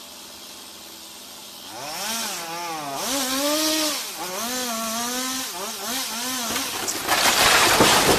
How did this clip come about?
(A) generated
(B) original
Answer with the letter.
B